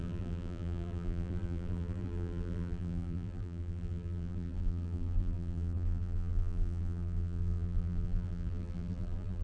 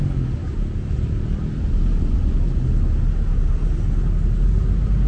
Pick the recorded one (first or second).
second